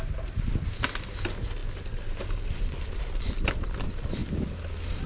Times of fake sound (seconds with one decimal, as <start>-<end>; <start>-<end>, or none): none